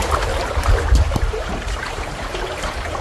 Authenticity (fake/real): fake